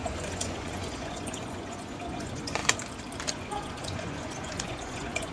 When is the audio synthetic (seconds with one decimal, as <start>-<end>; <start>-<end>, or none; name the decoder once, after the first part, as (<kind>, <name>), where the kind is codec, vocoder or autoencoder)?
0.0-2.6 (vocoder, Vocos); 3.3-5.3